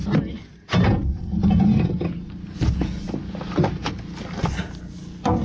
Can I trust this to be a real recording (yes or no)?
yes